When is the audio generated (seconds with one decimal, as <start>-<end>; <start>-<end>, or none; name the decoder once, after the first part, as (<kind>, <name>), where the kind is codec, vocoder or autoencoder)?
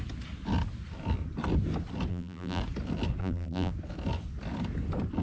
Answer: 2.1-2.6 (vocoder, BigVGAN v2); 3.2-3.7